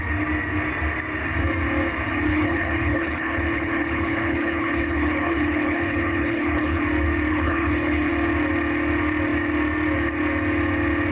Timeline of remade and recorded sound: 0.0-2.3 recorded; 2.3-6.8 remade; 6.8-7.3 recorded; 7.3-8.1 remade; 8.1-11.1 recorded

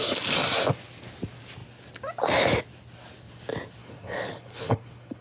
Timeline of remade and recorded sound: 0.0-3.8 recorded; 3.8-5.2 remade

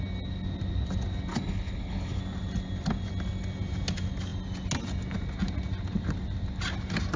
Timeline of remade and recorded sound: 0.0-1.3 recorded; 1.3-2.2 remade; 2.2-7.2 recorded